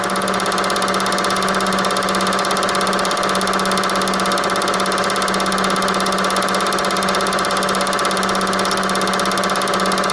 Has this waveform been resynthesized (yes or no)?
no